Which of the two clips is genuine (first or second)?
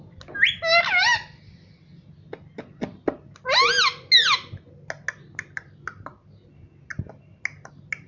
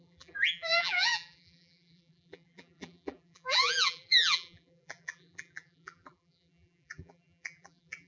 first